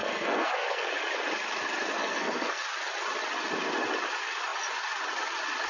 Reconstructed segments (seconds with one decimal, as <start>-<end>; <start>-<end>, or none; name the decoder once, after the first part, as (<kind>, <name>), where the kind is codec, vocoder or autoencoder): 0.0-0.9 (codec, SNAC); 2.0-2.6